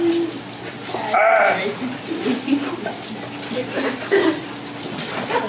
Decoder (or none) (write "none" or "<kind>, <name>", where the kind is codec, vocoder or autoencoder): none